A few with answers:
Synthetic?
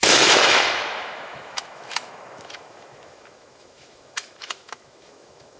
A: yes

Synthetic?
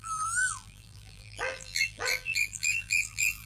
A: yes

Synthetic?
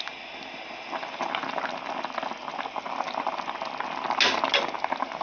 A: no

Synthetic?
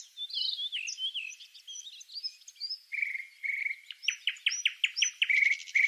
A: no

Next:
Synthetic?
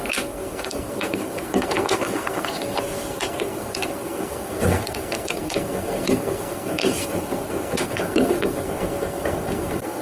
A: yes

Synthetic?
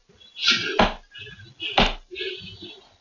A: no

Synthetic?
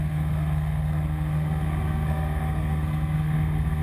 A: yes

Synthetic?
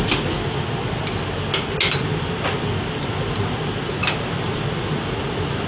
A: no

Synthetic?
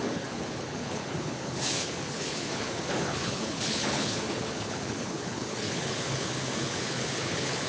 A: yes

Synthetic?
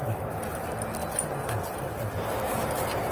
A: no